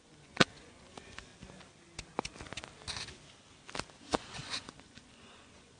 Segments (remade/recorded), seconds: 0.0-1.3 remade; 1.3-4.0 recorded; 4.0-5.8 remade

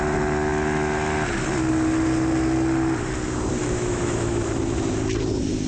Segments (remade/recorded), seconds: 0.0-3.6 recorded; 3.6-4.4 remade; 4.4-5.7 recorded